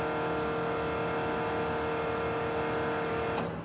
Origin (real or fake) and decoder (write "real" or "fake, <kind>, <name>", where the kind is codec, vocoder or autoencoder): real